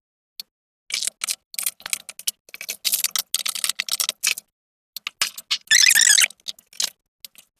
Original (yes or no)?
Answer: yes